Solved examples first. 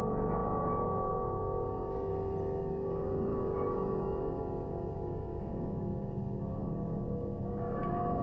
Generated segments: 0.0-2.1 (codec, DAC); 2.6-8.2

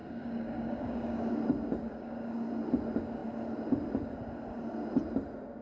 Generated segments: 0.0-1.3 (codec, DAC); 1.8-2.5